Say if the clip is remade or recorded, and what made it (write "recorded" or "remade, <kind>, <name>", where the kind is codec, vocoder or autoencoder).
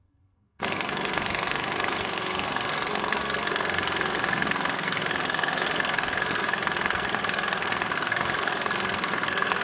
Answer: remade, codec, SNAC